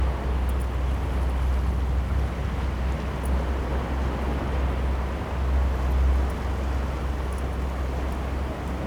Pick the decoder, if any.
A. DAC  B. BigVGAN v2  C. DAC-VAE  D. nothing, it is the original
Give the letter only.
D